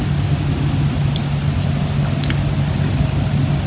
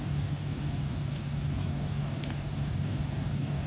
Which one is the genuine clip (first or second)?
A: first